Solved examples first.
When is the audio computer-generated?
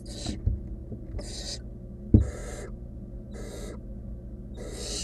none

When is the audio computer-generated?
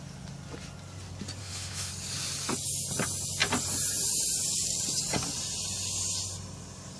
1.4-1.9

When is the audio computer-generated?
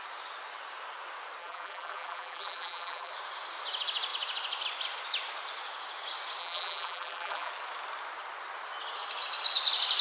1.4-3.1; 6.4-7.5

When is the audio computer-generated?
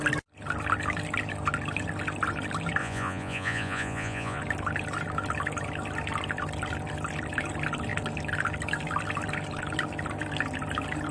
2.8-4.4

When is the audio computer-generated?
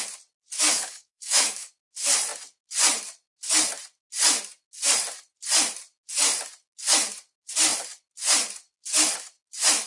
0.7-1.7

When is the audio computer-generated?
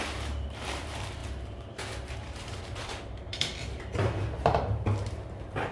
0.0-5.7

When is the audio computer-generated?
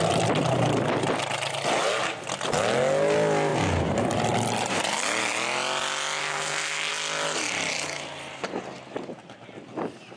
6.2-6.9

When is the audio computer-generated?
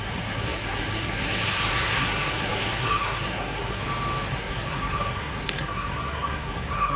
0.0-3.8; 4.3-7.0